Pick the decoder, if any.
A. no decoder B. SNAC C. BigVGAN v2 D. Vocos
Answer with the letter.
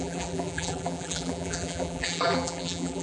C